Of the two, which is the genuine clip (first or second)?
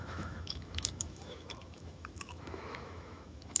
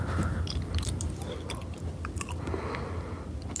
second